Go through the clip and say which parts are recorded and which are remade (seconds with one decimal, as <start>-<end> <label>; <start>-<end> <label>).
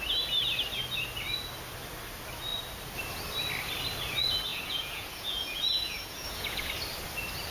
0.0-4.5 recorded; 4.5-6.7 remade; 6.7-7.5 recorded